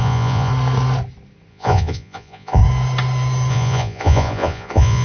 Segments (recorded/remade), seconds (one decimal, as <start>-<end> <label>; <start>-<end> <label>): 0.0-0.5 remade; 0.5-1.5 recorded; 1.5-2.6 remade; 2.6-3.5 recorded; 3.5-5.0 remade